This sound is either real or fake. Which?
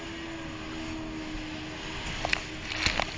real